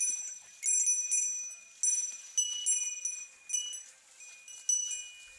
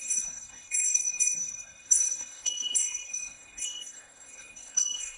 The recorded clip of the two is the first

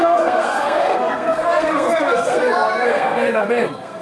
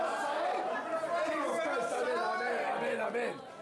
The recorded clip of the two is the second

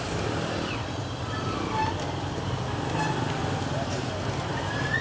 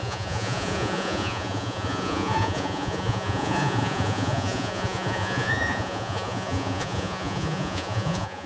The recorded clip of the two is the first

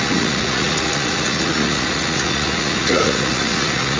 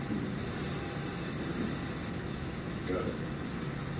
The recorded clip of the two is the second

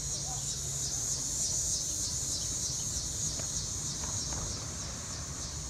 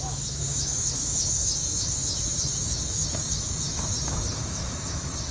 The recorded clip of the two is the first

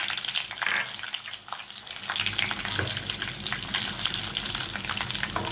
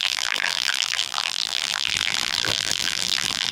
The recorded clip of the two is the first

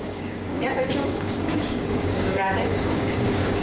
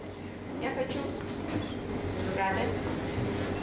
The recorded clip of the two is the second